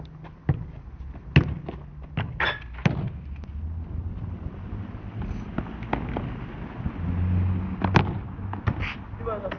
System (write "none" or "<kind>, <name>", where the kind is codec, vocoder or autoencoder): none